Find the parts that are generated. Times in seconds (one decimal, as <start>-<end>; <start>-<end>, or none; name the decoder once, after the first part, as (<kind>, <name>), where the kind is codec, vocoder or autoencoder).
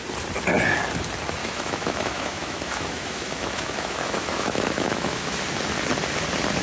1.4-5.4 (autoencoder, DAC-VAE)